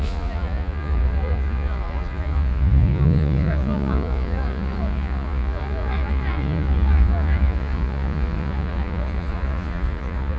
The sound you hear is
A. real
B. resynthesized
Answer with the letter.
B